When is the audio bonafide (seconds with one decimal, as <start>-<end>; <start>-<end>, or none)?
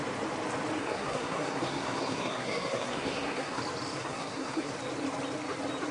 0.0-0.8; 3.6-4.0; 4.7-5.9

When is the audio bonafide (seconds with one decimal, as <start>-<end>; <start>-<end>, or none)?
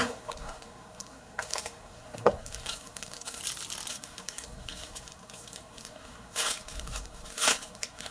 3.4-3.9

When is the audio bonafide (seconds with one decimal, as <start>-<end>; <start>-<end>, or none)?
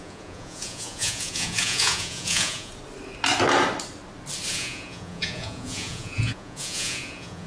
2.7-4.5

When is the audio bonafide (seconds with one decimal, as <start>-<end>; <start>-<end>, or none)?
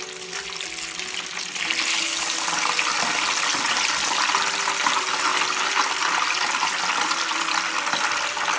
0.0-5.3; 8.1-8.6